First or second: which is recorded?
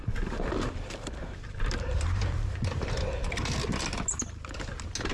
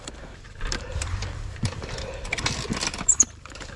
first